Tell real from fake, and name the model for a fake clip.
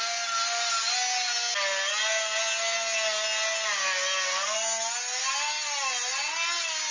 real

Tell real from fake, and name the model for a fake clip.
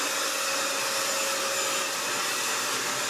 real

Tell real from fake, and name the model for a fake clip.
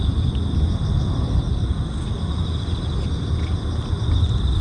real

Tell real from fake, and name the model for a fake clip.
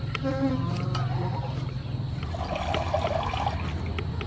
real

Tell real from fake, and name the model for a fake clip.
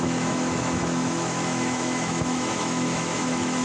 fake, autoencoder, DAC-VAE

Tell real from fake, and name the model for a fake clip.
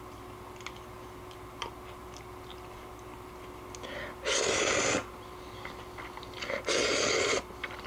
real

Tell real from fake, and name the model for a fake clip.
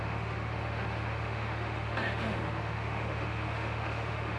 fake, autoencoder, DAC-VAE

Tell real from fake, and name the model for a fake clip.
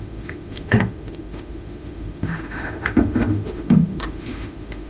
fake, autoencoder, DAC-VAE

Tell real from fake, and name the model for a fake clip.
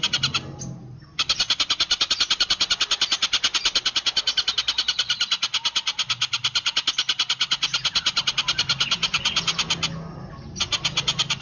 real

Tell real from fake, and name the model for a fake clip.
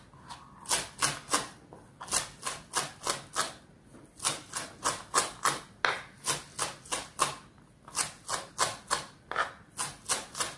real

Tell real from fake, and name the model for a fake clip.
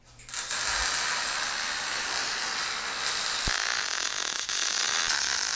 real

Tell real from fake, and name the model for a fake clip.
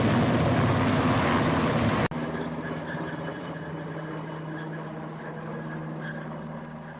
real